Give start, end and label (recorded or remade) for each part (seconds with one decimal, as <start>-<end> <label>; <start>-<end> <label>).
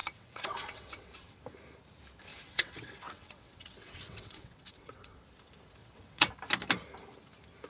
0.0-1.4 remade; 1.4-2.3 recorded; 2.3-5.2 remade; 5.2-5.8 recorded; 5.8-6.3 remade; 6.3-7.7 recorded